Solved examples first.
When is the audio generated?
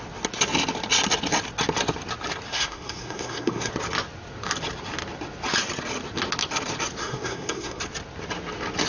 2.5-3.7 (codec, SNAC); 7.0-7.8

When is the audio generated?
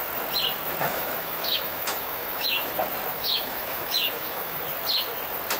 0.8-2.7 (autoencoder, DAC-VAE); 3.1-4.6